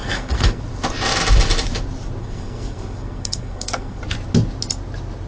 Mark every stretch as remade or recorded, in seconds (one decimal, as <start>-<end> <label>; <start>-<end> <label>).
0.0-0.6 remade; 0.6-2.2 recorded; 2.2-4.0 remade; 4.0-5.3 recorded